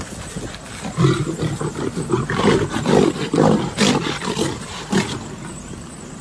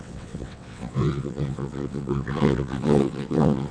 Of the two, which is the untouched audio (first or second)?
first